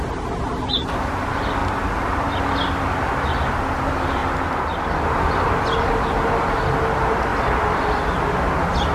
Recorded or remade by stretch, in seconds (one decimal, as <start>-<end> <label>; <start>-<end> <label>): 0.0-1.6 recorded; 1.6-2.2 remade; 2.2-4.2 recorded; 4.2-4.8 remade; 4.8-8.9 recorded